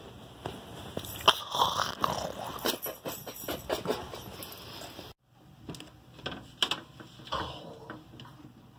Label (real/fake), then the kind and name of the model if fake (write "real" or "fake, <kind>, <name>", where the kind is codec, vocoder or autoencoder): real